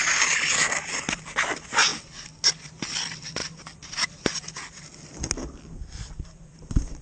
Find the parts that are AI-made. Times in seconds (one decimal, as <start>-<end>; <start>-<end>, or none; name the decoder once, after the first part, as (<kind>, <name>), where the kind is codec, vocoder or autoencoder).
0.5-1.9 (vocoder, BigVGAN v2); 2.5-3.4; 5.6-7.0